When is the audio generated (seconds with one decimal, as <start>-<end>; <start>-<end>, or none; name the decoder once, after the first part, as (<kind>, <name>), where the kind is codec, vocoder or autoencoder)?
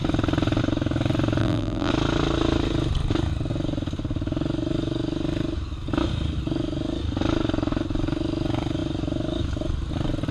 1.4-1.9 (vocoder, BigVGAN v2)